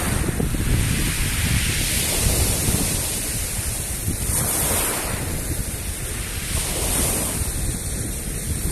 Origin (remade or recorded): remade